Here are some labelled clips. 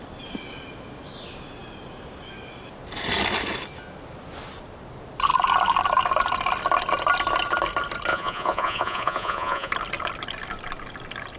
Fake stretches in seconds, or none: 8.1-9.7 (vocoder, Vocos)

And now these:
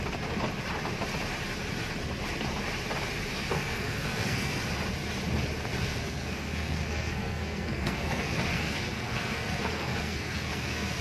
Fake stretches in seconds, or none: 3.3-4.6 (codec, SNAC); 5.8-11.0

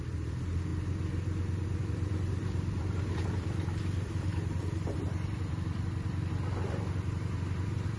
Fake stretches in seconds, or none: 0.0-0.7 (vocoder, BigVGAN v2); 1.8-8.0

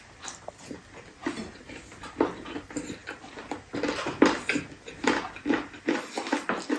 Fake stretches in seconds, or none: none

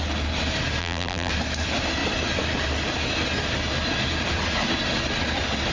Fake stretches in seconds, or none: 0.8-1.3 (vocoder, BigVGAN v2)